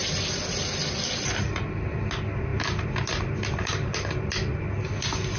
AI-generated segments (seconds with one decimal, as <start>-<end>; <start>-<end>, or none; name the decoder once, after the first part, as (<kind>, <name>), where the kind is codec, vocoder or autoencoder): none